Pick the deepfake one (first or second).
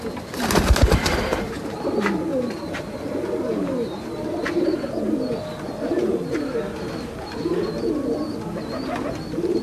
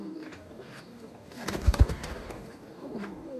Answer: second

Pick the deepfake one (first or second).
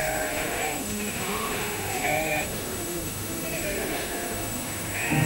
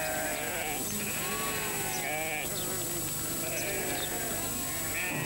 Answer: first